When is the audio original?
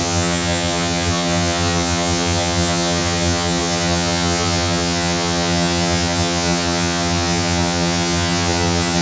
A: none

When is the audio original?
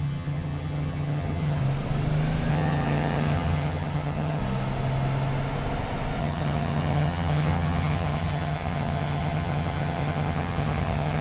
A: 1.6-2.5; 4.4-6.2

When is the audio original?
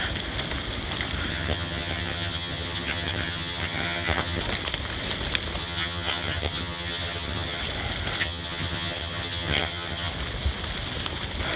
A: 0.0-1.3; 4.4-5.6; 7.6-8.2; 10.1-11.6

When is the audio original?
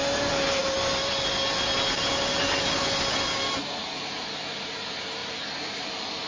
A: 0.0-6.3